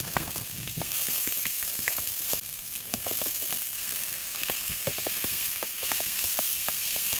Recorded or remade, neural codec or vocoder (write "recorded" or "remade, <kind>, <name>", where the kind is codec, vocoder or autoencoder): remade, codec, SNAC